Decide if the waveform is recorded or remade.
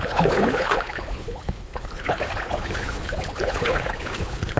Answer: remade